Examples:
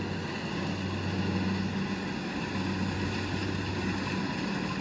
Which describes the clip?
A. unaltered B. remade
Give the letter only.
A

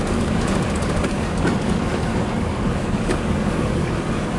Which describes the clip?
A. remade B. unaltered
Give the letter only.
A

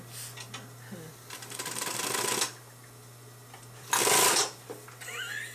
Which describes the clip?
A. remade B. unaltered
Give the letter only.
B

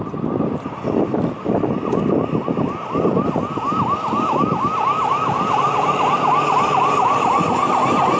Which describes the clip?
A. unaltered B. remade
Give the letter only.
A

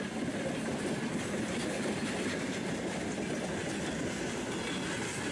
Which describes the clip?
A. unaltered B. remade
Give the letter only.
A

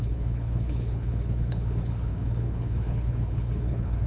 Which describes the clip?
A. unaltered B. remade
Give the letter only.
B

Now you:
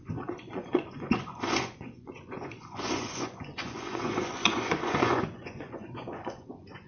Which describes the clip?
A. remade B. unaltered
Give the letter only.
A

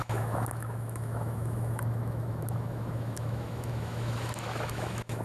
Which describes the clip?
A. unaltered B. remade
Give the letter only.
B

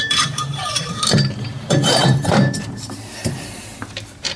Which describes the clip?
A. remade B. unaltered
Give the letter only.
A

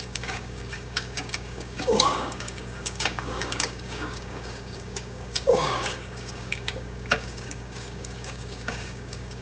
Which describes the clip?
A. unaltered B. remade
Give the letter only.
B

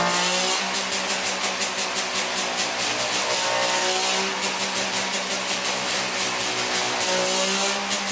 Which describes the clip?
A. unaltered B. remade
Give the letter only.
A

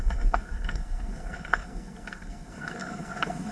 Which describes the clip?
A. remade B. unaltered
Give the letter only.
A